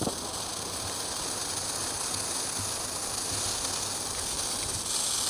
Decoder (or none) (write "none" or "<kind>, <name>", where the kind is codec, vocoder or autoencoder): none